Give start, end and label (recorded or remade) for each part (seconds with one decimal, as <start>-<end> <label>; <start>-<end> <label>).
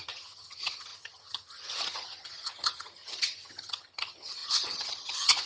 0.0-5.5 remade